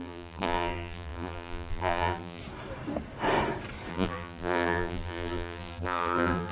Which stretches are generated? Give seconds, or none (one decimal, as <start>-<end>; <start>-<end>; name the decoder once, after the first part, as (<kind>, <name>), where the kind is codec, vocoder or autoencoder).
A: 0.0-2.4 (vocoder, BigVGAN v2); 3.9-6.5